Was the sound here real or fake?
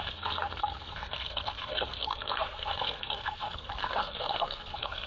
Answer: fake